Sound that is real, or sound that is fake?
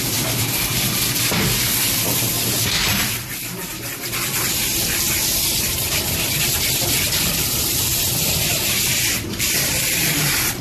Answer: fake